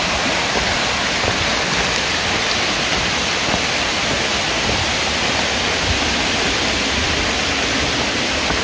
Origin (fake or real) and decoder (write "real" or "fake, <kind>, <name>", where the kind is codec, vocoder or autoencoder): real